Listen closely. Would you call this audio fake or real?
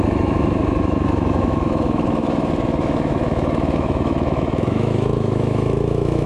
fake